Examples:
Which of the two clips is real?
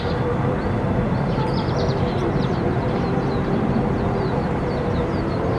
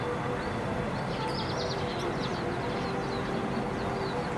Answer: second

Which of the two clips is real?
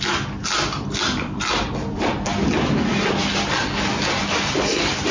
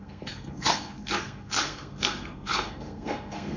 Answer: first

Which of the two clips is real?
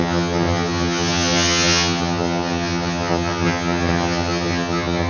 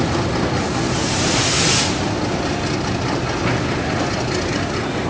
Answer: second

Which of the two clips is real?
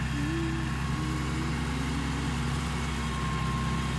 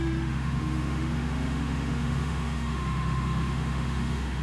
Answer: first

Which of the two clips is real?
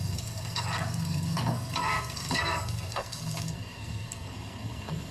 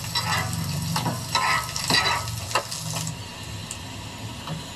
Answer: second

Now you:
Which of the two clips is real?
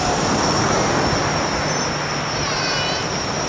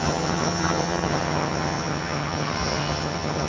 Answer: first